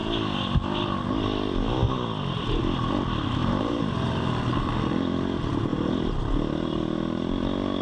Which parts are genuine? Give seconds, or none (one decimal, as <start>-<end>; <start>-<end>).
0.0-3.4; 4.3-5.7; 6.2-7.8